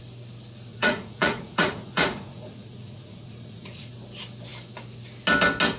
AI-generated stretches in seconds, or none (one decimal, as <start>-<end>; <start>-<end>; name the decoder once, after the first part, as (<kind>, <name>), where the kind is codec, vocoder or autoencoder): 0.7-3.9 (vocoder, Vocos)